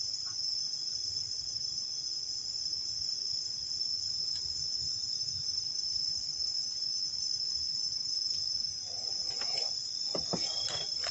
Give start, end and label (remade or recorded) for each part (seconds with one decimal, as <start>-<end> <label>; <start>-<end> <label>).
0.0-1.3 recorded; 1.3-2.6 remade; 2.6-11.1 recorded